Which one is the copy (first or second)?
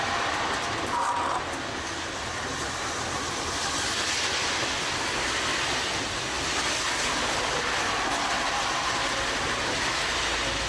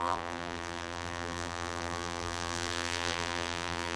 second